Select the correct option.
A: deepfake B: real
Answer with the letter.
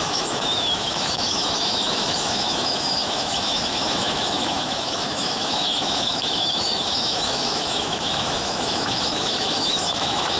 A